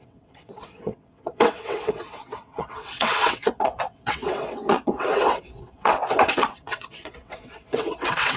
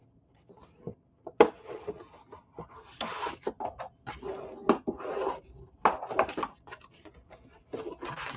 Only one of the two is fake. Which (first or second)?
first